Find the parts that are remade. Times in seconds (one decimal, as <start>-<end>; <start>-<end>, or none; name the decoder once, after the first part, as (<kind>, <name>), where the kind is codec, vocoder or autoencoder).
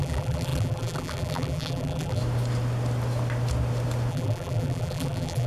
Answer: 0.0-2.2 (vocoder, BigVGAN v2); 4.1-5.5